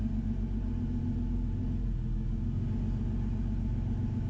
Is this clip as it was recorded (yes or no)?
yes